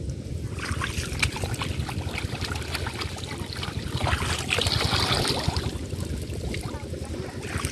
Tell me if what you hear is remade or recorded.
recorded